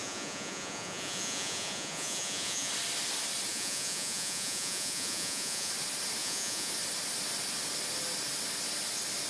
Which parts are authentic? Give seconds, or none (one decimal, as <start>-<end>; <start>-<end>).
2.7-3.5; 5.7-6.2; 6.7-9.3